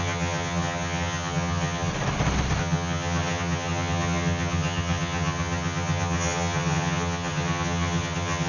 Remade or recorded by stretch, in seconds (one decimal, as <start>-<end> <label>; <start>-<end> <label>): 0.0-1.9 remade; 1.9-2.6 recorded; 2.6-8.5 remade